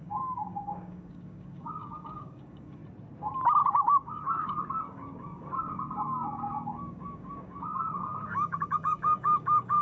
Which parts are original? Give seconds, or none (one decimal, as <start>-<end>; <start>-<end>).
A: 2.8-3.6